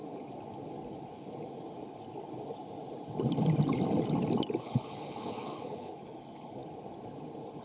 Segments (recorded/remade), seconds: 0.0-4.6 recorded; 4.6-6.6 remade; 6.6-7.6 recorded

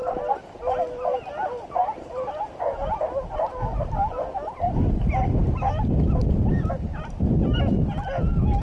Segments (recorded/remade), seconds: 0.0-8.6 recorded

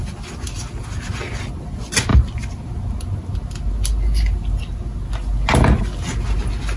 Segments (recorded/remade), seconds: 0.0-6.8 recorded

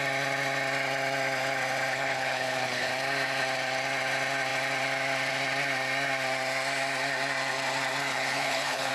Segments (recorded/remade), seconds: 0.0-1.9 recorded; 1.9-2.9 remade; 2.9-8.1 recorded; 8.1-8.9 remade

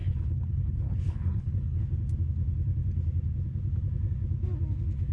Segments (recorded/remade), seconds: 0.0-1.8 remade; 1.8-5.1 recorded

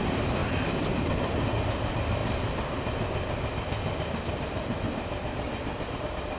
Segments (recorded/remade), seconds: 0.0-6.4 recorded